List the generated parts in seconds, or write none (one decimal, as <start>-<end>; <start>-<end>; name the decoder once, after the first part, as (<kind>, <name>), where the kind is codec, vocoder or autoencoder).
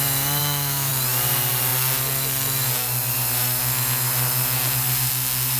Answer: 0.4-0.9 (autoencoder, DAC-VAE)